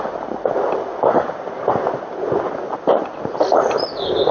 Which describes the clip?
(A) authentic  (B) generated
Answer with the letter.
A